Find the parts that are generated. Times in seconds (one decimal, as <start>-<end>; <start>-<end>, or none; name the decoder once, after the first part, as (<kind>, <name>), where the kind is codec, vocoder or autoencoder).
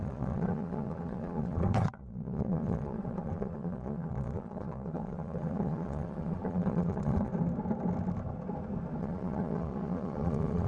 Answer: 0.0-7.3 (vocoder, Vocos); 9.0-10.7